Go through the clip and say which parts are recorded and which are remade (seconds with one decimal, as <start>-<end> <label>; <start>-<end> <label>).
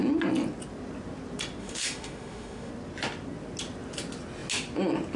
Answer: 0.0-1.6 recorded; 1.6-2.7 remade; 2.7-5.2 recorded